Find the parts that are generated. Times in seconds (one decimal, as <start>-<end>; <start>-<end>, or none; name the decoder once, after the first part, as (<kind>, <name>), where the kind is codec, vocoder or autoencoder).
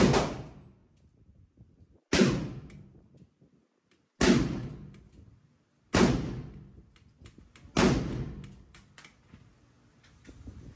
none